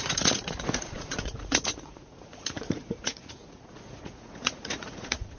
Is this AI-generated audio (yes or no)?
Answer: yes